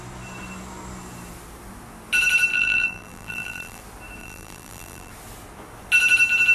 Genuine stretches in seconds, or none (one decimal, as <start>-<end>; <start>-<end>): 0.0-2.5; 3.8-4.2; 5.1-6.5